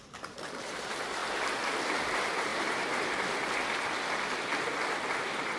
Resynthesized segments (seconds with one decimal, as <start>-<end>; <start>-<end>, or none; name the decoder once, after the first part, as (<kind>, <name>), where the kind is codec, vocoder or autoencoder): 2.5-3.4 (vocoder, BigVGAN v2)